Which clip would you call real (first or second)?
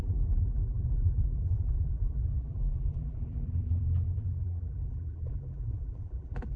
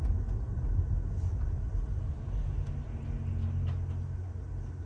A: second